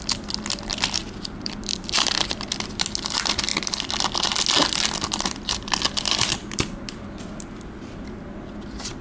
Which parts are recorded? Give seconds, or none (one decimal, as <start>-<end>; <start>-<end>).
0.0-0.7; 2.0-6.4; 7.7-9.0